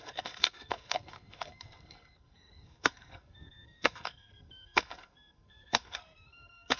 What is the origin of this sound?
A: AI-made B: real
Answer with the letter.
A